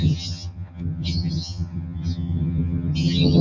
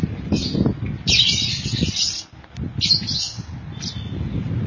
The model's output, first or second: first